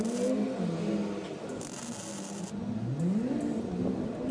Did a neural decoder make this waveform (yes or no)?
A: no